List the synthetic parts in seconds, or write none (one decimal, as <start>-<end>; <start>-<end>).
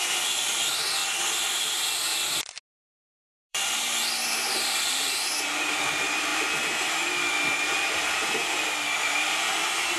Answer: 0.0-1.0; 3.5-10.0